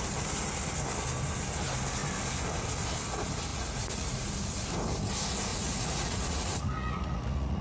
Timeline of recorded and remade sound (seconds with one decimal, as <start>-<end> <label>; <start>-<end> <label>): 0.0-3.5 recorded; 3.5-4.3 remade; 4.3-5.5 recorded; 5.5-7.6 remade